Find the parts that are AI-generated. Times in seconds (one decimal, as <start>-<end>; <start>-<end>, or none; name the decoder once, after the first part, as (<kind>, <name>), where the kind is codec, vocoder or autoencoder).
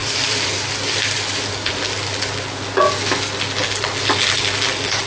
0.0-1.7 (vocoder, BigVGAN v2)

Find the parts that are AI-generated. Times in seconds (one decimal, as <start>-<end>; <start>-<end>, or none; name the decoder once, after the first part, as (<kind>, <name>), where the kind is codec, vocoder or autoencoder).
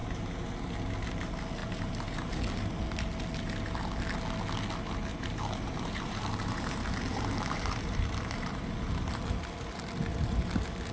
0.0-0.7 (vocoder, BigVGAN v2); 1.6-2.4; 5.1-9.1